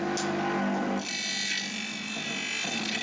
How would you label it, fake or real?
real